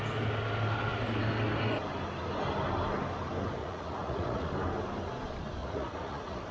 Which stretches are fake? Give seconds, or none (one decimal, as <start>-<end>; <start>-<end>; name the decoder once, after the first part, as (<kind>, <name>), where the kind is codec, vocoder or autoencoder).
3.6-4.5 (vocoder, Vocos); 5.6-6.5